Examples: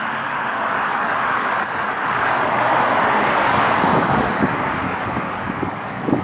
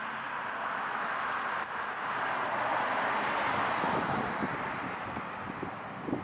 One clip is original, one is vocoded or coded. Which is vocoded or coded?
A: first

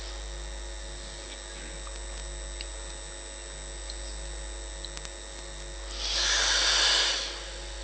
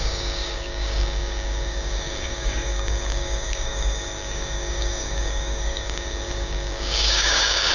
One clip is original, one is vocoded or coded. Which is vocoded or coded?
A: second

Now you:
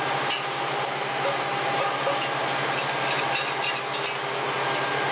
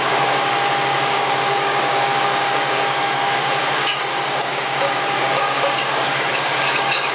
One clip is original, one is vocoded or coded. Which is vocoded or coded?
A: second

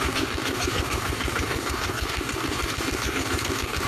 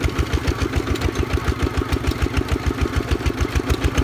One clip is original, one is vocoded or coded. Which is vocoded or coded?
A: first